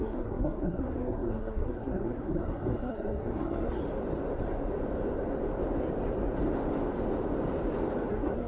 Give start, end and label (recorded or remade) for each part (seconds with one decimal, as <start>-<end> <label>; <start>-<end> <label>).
0.0-3.8 remade; 3.8-8.1 recorded; 8.1-8.5 remade